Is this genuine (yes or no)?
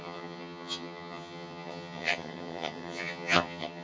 no